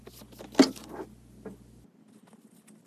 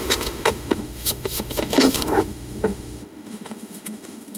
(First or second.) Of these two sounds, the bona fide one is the first